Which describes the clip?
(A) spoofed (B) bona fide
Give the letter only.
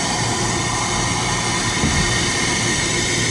B